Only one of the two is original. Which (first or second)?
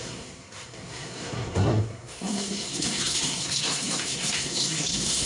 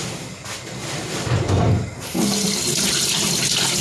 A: second